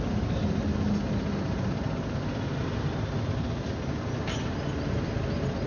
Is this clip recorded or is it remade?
recorded